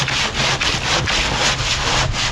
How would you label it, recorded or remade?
recorded